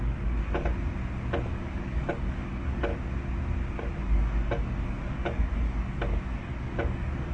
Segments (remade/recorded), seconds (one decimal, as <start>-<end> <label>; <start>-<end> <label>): 0.0-0.7 remade; 0.7-1.3 recorded; 1.3-2.9 remade; 2.9-4.0 recorded; 4.0-7.3 remade